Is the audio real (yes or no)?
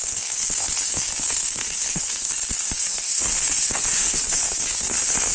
no